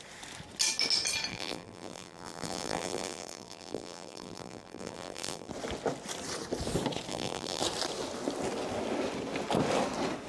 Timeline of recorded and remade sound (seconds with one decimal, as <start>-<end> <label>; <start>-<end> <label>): 0.0-1.3 recorded; 1.3-5.5 remade; 5.5-7.1 recorded; 7.1-7.6 remade; 7.6-10.3 recorded